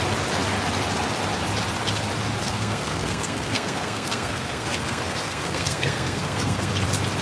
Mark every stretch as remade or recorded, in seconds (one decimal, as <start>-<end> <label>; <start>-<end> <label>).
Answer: 0.0-2.4 recorded; 2.4-6.7 remade; 6.7-7.2 recorded

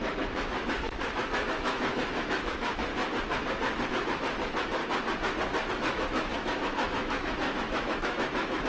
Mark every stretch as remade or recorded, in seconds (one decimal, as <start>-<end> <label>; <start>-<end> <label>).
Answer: 0.0-2.9 remade; 2.9-3.9 recorded; 3.9-4.8 remade; 4.8-5.7 recorded; 5.7-8.7 remade

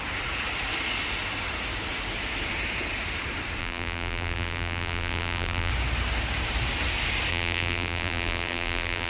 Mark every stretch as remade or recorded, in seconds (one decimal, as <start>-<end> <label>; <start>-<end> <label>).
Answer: 0.0-3.6 recorded; 3.6-5.7 remade; 5.7-7.3 recorded; 7.3-9.1 remade

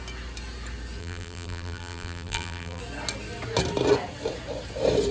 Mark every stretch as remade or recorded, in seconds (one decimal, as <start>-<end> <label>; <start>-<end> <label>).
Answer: 0.0-1.0 recorded; 1.0-2.8 remade; 2.8-5.1 recorded

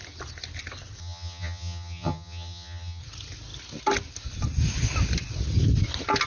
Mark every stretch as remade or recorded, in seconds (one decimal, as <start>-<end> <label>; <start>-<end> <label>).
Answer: 0.0-1.0 recorded; 1.0-3.0 remade; 3.0-6.3 recorded

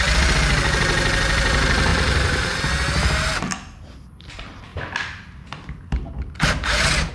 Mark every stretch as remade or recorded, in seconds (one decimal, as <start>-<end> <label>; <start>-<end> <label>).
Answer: 0.0-1.9 recorded; 1.9-2.6 remade; 2.6-7.1 recorded

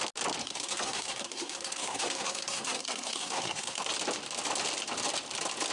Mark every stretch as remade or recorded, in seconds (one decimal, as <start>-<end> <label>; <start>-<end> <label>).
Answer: 0.0-0.4 recorded; 0.4-3.8 remade; 3.8-5.7 recorded

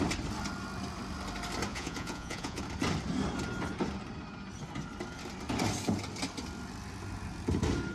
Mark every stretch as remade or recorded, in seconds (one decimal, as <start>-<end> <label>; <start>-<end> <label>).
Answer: 0.0-1.7 recorded; 1.7-2.6 remade; 2.6-7.9 recorded